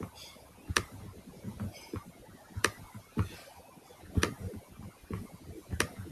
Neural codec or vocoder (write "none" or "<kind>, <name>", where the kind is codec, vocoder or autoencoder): none